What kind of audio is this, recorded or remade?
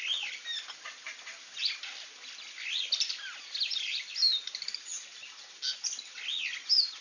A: recorded